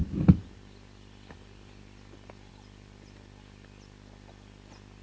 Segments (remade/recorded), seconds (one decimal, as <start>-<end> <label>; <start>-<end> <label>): 0.0-5.0 recorded